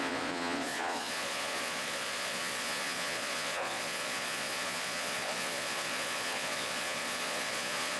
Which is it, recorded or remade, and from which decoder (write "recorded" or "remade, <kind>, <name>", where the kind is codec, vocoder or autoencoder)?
remade, vocoder, Vocos